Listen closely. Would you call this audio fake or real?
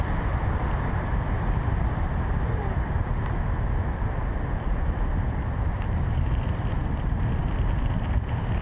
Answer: real